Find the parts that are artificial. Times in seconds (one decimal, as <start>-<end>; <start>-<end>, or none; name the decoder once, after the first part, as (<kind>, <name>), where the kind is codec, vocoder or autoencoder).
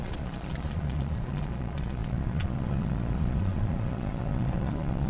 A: 0.0-5.1 (vocoder, Vocos)